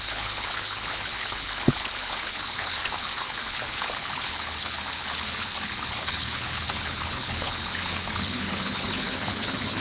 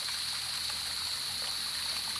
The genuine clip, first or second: second